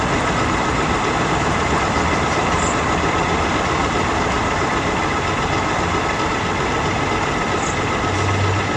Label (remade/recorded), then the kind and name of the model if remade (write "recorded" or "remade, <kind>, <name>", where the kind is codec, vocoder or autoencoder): recorded